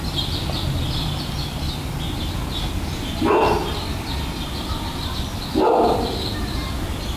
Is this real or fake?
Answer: real